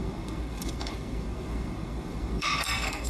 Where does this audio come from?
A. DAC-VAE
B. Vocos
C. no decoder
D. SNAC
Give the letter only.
D